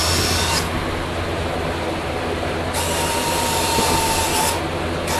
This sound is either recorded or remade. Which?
recorded